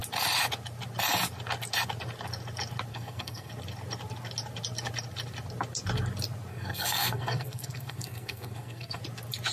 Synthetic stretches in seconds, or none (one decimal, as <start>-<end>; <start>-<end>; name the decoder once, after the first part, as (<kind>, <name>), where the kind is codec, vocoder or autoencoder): 2.9-3.5 (codec, SNAC); 6.5-9.0